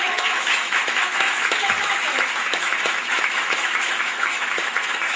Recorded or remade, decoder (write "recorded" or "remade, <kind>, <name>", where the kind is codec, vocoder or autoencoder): remade, autoencoder, DAC-VAE